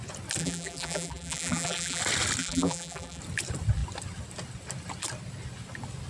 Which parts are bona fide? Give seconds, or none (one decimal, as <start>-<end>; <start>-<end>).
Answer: 0.0-0.4; 2.0-2.4; 3.2-6.1